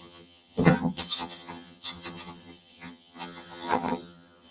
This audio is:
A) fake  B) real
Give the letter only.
A